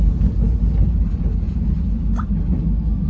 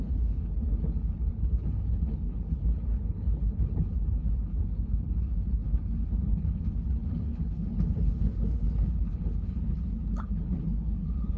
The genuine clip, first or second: first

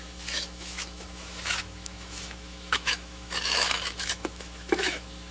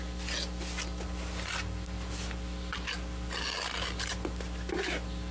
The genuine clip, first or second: second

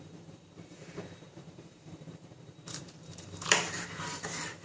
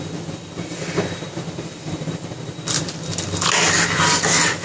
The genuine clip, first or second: second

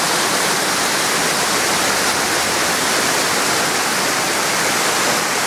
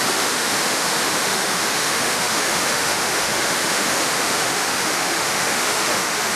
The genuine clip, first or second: first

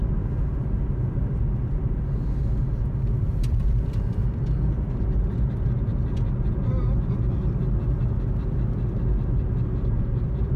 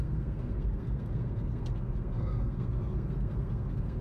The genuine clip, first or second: first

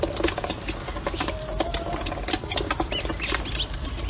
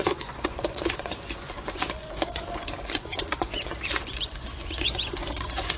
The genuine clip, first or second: first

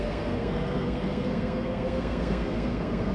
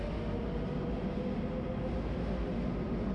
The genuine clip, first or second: second